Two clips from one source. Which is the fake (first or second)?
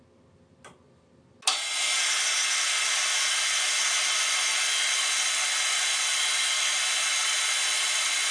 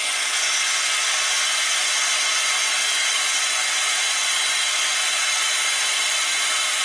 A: second